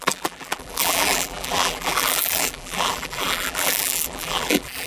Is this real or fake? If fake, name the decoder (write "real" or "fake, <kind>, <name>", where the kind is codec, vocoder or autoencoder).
fake, vocoder, BigVGAN v2